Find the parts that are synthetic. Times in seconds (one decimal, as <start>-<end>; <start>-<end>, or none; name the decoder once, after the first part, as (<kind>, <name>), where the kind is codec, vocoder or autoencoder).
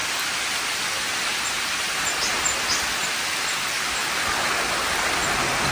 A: none